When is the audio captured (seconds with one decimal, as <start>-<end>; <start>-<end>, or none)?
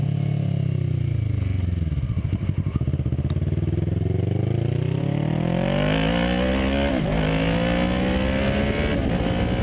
0.0-9.6